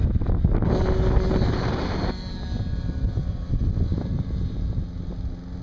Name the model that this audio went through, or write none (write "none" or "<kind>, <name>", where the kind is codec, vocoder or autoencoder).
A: none